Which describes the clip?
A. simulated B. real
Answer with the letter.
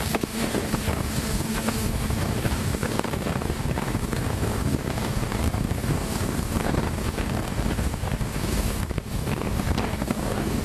A